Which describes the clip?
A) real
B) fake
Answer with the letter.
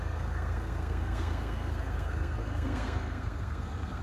B